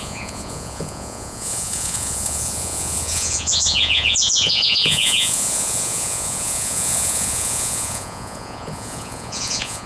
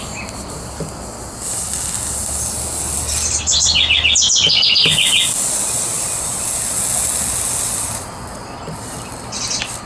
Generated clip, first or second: first